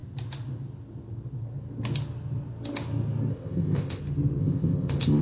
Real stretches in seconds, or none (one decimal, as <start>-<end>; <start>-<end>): 0.0-3.3; 4.0-4.4